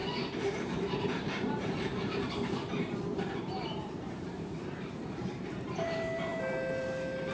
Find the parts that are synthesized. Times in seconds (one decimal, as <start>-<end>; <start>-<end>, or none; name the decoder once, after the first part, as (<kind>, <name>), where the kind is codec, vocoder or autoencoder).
0.0-7.3 (vocoder, BigVGAN v2)